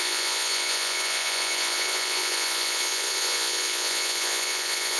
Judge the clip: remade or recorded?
remade